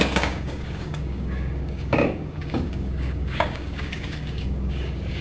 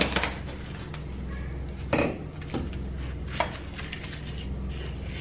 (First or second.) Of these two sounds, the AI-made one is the first